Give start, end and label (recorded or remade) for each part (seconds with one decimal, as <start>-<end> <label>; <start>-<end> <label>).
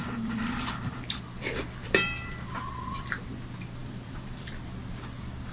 0.0-3.3 remade; 3.3-3.8 recorded; 3.8-4.6 remade; 4.6-5.5 recorded